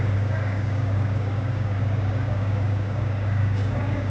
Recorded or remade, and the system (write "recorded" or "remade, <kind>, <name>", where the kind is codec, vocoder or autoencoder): remade, codec, DAC